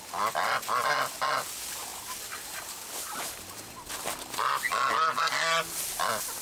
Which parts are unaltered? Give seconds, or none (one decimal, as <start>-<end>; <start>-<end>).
0.0-6.4